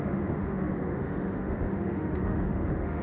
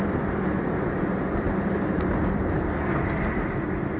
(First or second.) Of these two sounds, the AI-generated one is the first